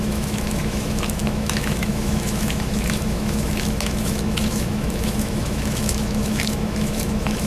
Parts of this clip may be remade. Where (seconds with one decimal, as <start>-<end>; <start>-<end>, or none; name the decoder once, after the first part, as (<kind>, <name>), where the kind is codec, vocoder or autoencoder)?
0.0-7.5 (autoencoder, DAC-VAE)